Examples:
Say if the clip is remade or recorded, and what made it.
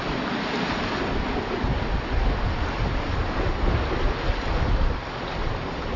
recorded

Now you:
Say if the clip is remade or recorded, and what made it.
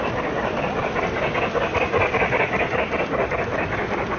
recorded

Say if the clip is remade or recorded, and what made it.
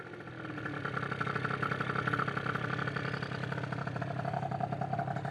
recorded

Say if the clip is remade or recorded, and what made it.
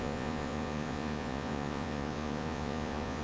remade, vocoder, Vocos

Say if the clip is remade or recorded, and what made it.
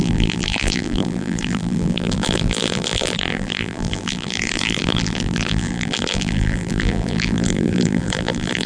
remade, vocoder, BigVGAN v2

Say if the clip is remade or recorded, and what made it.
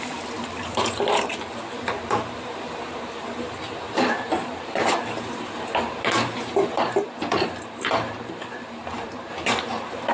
remade, vocoder, BigVGAN v2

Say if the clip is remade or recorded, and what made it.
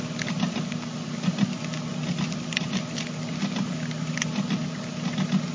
recorded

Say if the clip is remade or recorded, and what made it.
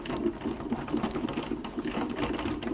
recorded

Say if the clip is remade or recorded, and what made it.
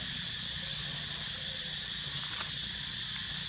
recorded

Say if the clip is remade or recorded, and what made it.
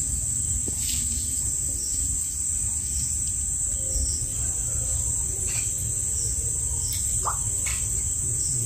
recorded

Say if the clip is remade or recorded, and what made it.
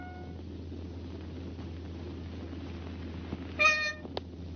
recorded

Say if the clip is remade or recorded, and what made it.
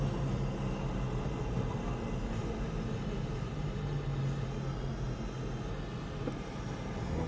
recorded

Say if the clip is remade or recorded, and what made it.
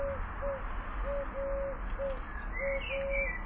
recorded